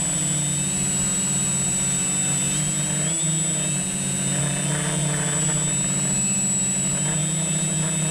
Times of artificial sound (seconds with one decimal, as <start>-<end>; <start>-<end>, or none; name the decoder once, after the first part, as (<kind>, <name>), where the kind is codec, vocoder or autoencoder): none